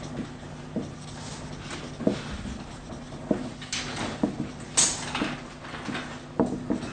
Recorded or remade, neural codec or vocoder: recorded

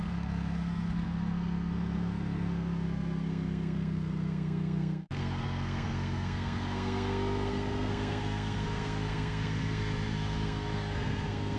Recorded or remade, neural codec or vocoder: remade, codec, SNAC